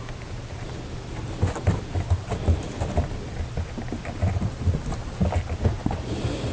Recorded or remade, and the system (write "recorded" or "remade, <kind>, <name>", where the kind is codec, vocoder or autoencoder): recorded